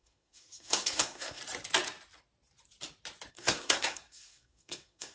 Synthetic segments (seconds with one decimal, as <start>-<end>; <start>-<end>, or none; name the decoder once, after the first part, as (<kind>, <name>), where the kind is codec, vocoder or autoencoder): 0.0-1.4 (codec, SNAC); 3.3-5.1

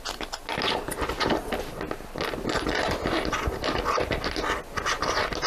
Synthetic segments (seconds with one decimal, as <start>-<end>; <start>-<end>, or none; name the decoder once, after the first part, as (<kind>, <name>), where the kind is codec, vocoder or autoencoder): none

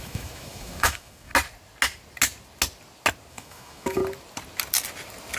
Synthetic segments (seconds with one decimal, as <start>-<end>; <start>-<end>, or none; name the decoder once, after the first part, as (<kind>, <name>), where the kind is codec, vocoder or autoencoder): 0.0-1.3 (autoencoder, DAC-VAE); 3.3-4.0

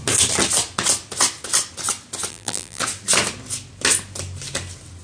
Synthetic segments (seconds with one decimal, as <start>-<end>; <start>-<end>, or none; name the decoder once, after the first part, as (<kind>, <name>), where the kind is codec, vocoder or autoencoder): 2.3-2.8 (vocoder, BigVGAN v2)

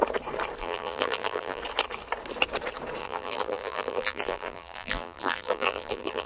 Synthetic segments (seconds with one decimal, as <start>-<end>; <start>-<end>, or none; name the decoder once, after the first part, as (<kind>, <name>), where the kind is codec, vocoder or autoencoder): 0.6-1.6 (vocoder, BigVGAN v2); 3.0-6.3

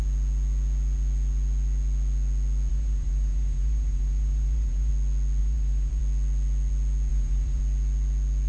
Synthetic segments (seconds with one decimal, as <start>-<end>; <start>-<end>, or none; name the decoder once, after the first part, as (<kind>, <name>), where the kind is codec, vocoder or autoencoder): 2.7-4.9 (vocoder, BigVGAN v2); 5.4-6.0; 7.1-7.6